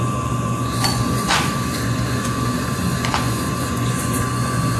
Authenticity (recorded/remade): remade